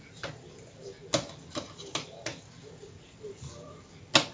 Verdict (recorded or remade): recorded